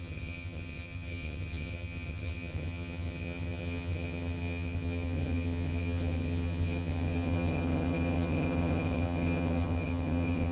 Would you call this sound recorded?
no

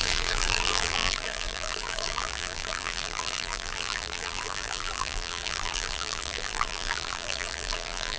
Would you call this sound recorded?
no